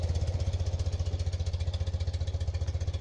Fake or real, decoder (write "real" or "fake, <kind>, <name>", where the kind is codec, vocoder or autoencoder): real